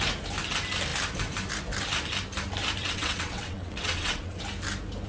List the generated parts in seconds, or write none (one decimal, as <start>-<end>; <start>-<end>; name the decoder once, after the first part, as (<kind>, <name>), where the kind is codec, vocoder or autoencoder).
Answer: 2.8-4.4 (vocoder, WaveNeXt)